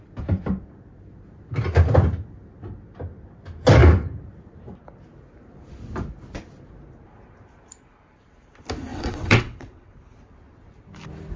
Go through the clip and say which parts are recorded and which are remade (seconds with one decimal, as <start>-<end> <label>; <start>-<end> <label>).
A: 0.0-8.9 recorded; 8.9-9.9 remade; 9.9-11.4 recorded